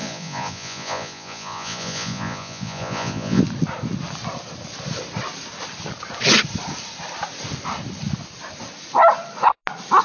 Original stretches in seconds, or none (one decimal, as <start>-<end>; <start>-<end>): 3.4-10.0